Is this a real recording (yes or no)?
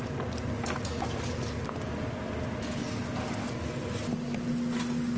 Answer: yes